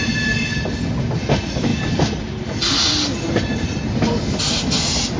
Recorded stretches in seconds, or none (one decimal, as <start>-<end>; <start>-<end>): 0.0-5.2